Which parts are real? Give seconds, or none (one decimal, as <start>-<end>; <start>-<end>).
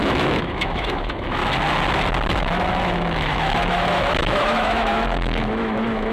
1.4-2.4